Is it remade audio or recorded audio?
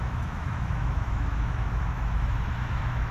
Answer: remade